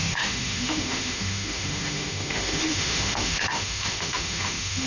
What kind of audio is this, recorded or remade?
remade